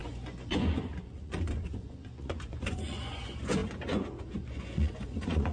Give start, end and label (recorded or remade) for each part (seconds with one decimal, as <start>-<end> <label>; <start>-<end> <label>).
0.0-5.5 remade